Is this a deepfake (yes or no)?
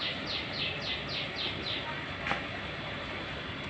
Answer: no